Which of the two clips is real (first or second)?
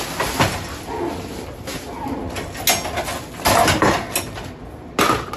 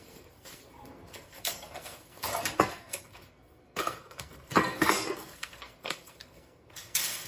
first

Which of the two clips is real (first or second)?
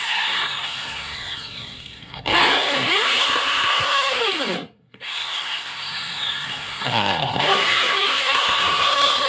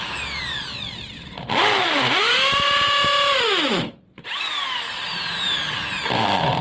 second